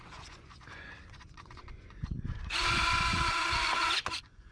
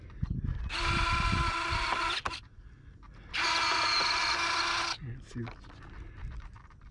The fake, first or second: first